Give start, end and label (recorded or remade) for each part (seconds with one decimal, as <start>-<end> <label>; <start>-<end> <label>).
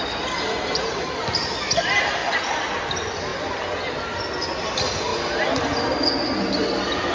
0.0-7.1 recorded